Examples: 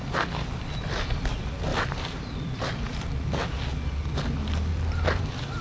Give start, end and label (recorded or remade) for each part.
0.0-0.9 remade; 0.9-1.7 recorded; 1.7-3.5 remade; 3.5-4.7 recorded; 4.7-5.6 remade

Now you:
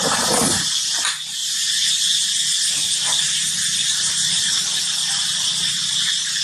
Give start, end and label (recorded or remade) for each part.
0.0-6.4 recorded

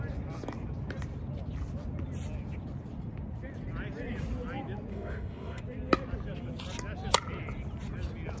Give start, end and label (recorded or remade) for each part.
0.0-4.9 recorded; 4.9-5.6 remade; 5.6-8.4 recorded

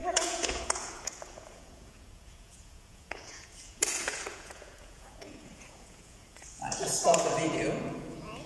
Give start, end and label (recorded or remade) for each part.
0.0-8.5 remade

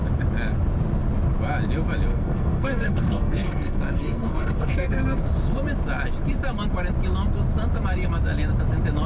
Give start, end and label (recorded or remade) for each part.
0.0-2.1 recorded; 2.1-5.2 remade; 5.2-9.1 recorded